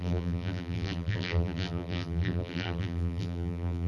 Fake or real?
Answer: fake